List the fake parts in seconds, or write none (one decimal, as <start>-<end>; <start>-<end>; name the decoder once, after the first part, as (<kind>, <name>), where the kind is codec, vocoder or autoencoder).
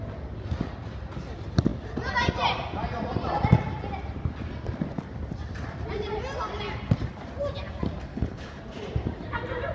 8.1-8.6 (codec, HILCodec)